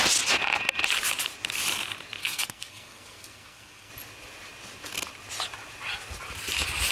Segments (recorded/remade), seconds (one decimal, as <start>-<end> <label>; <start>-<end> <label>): 0.0-2.2 recorded; 2.2-3.9 remade; 3.9-6.9 recorded